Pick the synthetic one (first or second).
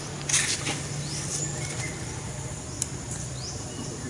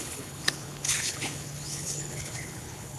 second